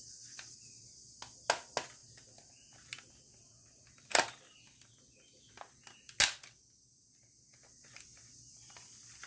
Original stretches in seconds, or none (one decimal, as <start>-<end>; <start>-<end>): 0.0-9.3